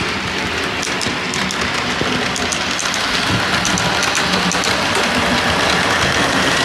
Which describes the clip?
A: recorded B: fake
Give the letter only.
A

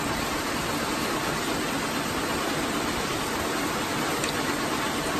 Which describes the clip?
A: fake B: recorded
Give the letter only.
B